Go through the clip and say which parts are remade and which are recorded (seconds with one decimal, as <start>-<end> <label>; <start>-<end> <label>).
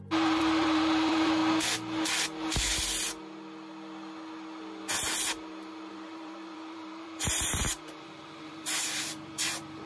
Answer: 0.0-1.4 remade; 1.4-5.9 recorded; 5.9-9.9 remade